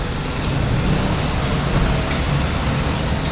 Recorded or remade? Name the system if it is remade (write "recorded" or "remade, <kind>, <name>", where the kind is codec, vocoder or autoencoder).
recorded